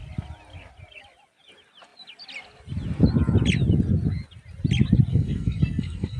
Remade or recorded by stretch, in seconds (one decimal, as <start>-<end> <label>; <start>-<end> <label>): 0.0-5.1 recorded; 5.1-6.2 remade